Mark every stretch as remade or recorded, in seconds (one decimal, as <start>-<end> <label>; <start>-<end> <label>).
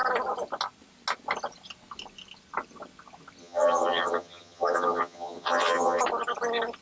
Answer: 0.0-3.4 recorded; 3.4-6.0 remade; 6.0-6.8 recorded